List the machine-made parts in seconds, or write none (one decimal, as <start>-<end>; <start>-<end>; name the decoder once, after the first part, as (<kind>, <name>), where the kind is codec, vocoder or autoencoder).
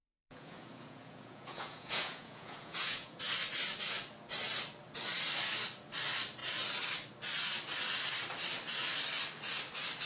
0.0-3.2 (vocoder, Vocos)